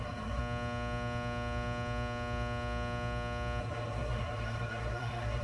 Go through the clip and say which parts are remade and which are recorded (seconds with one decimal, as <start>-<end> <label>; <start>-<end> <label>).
0.0-0.4 remade; 0.4-3.6 recorded; 3.6-5.4 remade